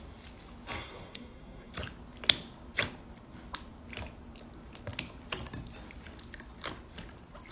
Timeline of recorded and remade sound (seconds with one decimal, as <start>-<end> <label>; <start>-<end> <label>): 0.0-0.8 recorded; 0.8-1.7 remade; 1.7-7.5 recorded